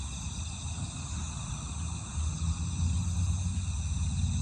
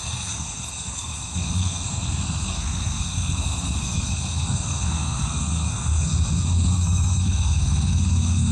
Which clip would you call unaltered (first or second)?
first